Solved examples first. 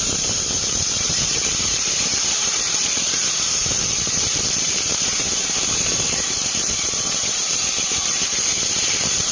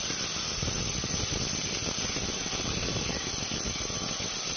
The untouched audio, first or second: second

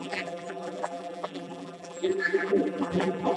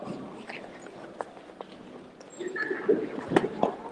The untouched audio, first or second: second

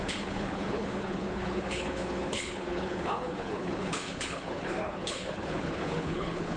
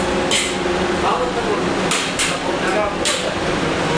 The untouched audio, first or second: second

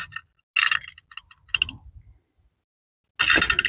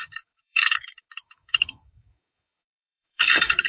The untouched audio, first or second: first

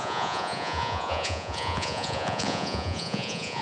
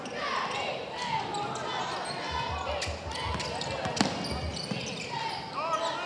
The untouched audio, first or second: second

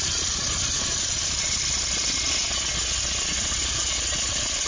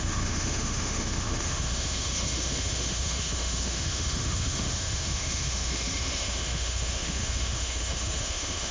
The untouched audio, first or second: first